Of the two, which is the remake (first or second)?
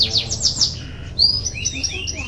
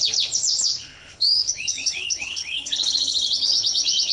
second